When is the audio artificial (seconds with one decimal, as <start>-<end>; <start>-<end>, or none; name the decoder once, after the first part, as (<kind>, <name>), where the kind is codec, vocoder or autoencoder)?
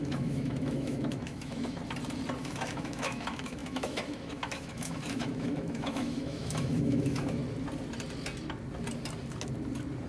0.0-1.8 (autoencoder, DAC-VAE); 2.4-7.4